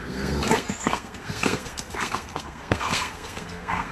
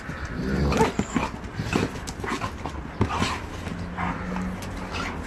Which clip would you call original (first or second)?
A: second